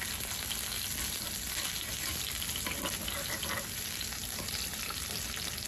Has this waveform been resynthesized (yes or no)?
no